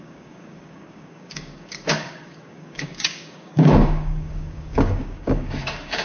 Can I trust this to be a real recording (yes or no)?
no